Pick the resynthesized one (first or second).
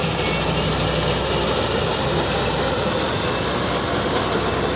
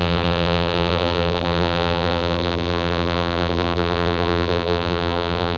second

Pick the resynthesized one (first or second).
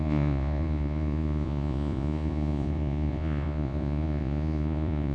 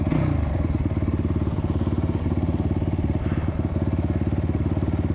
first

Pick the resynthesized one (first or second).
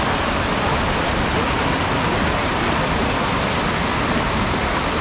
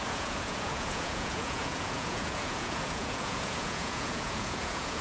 second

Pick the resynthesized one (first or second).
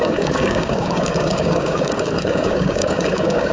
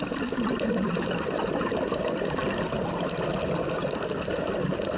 first